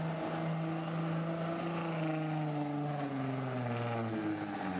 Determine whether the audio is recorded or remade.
recorded